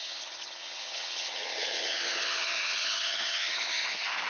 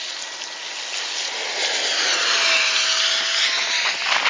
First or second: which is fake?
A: first